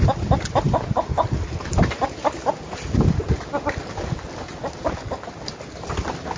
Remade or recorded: recorded